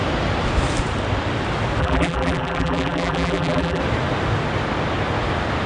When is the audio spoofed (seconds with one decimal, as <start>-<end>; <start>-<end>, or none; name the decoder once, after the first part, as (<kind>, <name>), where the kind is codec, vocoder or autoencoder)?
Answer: 1.8-3.8 (vocoder, BigVGAN v2)